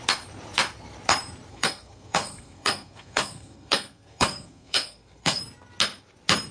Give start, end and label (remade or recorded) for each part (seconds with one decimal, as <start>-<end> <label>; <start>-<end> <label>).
0.0-1.5 recorded; 1.5-5.4 remade; 5.4-6.5 recorded